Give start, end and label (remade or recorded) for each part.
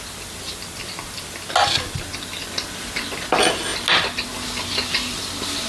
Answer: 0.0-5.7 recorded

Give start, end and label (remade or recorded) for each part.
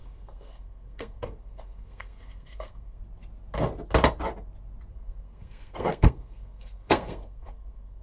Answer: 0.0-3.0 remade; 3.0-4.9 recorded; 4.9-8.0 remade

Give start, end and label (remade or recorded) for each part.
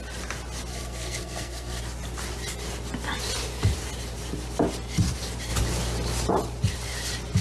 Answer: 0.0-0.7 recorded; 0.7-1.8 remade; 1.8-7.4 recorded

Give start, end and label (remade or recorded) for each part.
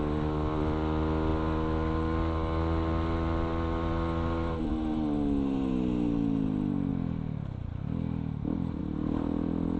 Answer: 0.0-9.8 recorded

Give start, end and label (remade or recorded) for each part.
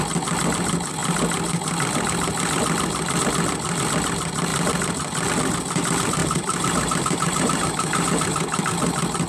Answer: 0.0-6.2 recorded; 6.2-8.6 remade; 8.6-9.3 recorded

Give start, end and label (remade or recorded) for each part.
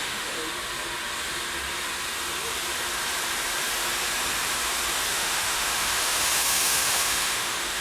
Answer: 0.0-0.4 remade; 0.4-5.1 recorded; 5.1-7.8 remade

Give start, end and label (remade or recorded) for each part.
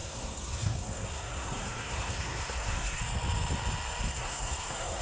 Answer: 0.0-3.0 remade; 3.0-4.1 recorded; 4.1-5.0 remade